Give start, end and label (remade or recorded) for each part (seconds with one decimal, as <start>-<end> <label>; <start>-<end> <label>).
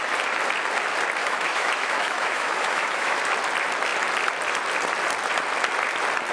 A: 0.0-1.2 recorded; 1.2-3.2 remade; 3.2-6.3 recorded